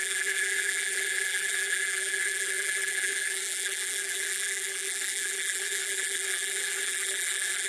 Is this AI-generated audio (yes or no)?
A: yes